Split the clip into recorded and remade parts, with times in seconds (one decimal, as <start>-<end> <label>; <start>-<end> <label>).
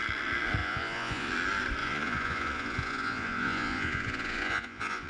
0.0-0.6 recorded; 0.6-1.3 remade; 1.3-1.8 recorded; 1.8-5.1 remade